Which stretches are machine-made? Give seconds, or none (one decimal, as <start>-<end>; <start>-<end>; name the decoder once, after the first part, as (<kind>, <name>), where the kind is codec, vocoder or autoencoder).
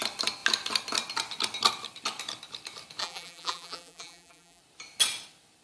3.0-4.6 (vocoder, BigVGAN v2)